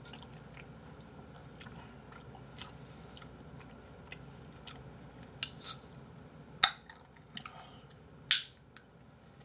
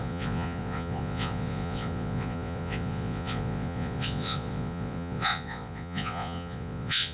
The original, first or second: first